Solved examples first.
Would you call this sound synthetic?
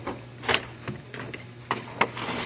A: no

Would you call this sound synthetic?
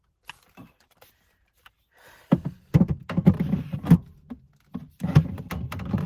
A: no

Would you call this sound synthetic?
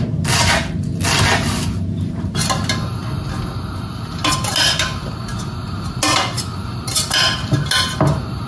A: no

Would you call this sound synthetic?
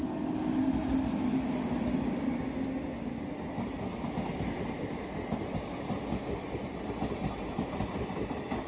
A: no